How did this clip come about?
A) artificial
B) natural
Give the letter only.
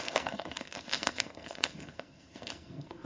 A